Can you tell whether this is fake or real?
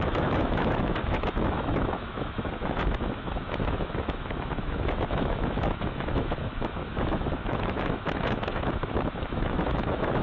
fake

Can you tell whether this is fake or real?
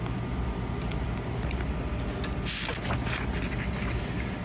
real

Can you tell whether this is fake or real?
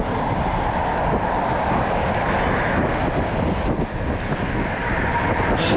real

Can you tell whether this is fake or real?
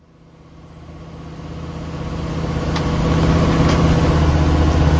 real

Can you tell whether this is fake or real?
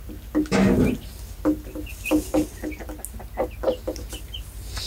real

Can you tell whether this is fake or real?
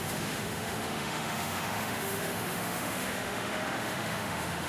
fake